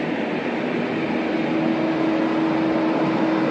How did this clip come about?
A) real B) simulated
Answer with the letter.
A